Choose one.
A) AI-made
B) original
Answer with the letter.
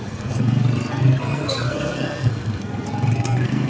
A